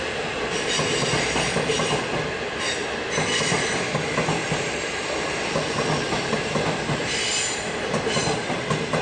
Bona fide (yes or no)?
yes